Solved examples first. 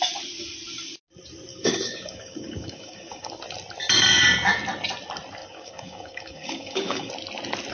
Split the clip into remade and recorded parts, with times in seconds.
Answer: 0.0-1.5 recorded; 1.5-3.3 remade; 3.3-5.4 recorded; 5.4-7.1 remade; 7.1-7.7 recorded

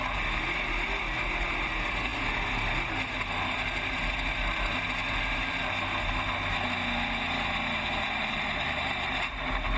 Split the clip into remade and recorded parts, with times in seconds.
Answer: 0.0-9.8 recorded

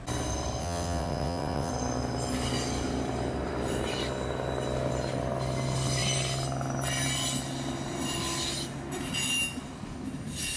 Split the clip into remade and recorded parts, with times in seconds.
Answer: 0.0-0.6 recorded; 0.6-1.7 remade; 1.7-10.6 recorded